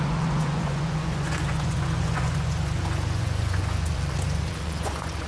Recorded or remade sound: remade